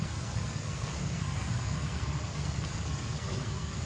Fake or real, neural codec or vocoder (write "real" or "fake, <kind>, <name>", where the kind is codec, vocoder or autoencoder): fake, codec, SNAC